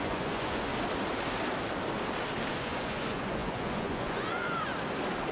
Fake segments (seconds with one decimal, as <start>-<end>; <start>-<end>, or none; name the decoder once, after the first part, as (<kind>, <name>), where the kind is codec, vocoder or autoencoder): 0.0-0.7 (vocoder, Vocos); 2.5-4.7